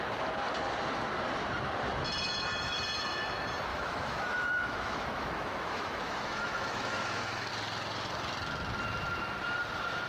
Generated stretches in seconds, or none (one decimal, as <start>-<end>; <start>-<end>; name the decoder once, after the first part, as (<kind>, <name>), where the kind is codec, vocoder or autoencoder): 3.7-7.5 (autoencoder, DAC-VAE)